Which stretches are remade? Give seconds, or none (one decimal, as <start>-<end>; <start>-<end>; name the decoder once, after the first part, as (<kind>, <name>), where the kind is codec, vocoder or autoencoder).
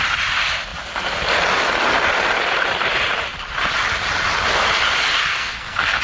5.3-6.0 (codec, SNAC)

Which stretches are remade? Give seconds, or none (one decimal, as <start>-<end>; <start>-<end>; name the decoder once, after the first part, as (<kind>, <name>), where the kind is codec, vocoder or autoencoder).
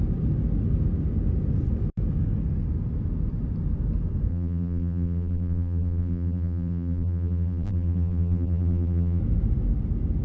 4.3-9.2 (vocoder, BigVGAN v2)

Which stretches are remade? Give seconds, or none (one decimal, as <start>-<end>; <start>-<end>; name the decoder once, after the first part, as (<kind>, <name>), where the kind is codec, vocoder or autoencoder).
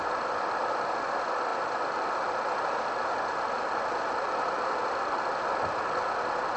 none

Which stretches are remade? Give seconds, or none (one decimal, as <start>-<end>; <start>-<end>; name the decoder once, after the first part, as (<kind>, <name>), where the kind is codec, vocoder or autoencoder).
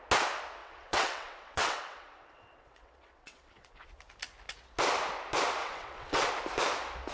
0.6-3.9 (vocoder, WaveNeXt); 5.6-6.3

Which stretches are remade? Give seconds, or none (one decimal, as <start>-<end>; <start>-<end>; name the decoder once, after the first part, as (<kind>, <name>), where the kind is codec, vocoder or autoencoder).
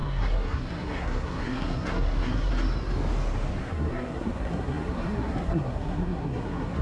0.0-2.5 (codec, SNAC); 3.6-6.8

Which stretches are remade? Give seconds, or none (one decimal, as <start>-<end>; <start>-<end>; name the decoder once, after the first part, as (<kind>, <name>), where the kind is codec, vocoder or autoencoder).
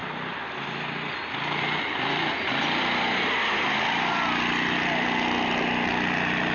0.0-3.2 (vocoder, BigVGAN v2)